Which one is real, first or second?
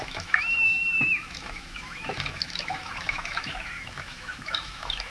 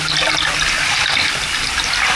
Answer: second